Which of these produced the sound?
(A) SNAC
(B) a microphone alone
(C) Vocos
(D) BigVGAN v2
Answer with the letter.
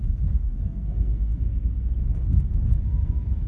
A